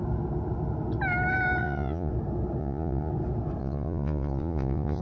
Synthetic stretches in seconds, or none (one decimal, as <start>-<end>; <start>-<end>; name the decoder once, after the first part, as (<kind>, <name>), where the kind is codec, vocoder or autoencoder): 1.6-2.1 (vocoder, Vocos); 2.6-3.1; 3.6-5.0